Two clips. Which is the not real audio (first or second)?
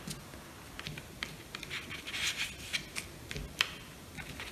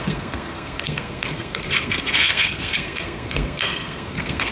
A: second